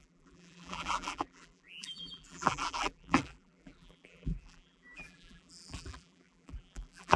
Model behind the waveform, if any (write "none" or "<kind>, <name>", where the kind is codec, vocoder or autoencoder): vocoder, BigVGAN v2